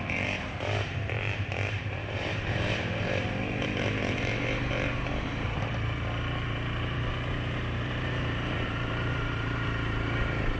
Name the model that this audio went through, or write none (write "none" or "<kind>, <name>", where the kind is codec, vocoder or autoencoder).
vocoder, BigVGAN v2